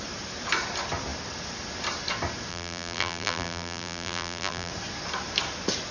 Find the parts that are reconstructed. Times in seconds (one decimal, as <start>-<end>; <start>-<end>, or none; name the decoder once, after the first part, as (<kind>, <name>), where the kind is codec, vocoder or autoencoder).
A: 2.5-4.7 (vocoder, BigVGAN v2)